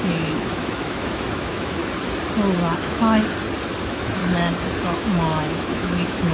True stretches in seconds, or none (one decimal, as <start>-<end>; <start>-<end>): 1.8-2.8; 3.2-3.8; 4.2-4.8

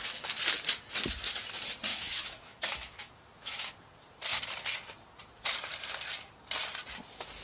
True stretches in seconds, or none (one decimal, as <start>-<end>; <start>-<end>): 0.0-1.9; 3.7-7.4

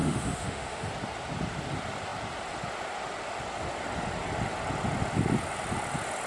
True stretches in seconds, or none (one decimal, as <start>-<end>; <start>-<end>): 0.9-6.3